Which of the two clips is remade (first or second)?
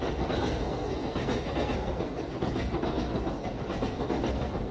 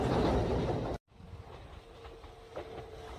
first